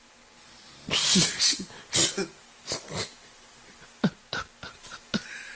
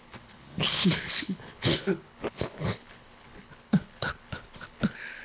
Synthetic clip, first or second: second